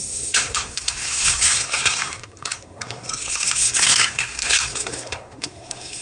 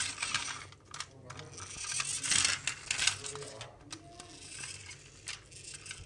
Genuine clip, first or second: second